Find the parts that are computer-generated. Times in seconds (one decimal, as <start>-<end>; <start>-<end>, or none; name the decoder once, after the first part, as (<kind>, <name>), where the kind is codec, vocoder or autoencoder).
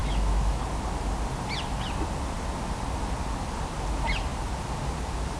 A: 0.0-0.6 (autoencoder, DAC-VAE)